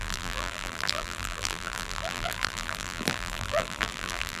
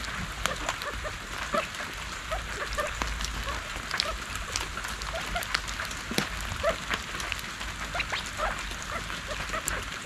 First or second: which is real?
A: second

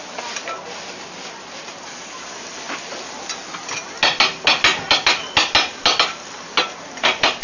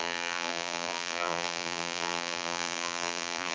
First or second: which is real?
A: first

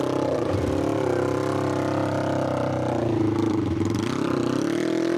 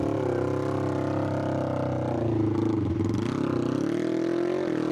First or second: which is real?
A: second